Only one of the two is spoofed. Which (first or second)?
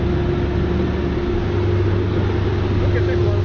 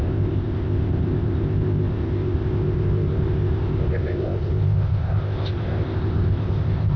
second